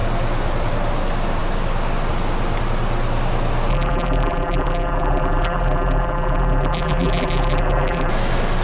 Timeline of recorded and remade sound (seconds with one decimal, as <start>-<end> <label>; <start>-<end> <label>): 0.0-3.7 recorded; 3.7-8.1 remade; 8.1-8.6 recorded